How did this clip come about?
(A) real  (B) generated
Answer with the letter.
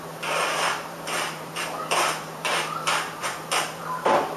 B